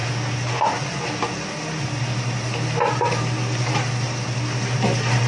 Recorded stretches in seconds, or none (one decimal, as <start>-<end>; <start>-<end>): 0.0-5.3